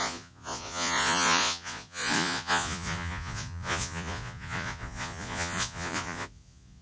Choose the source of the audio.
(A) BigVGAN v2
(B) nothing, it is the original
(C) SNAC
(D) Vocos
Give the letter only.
D